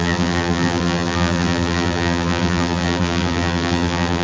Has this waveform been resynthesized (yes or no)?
yes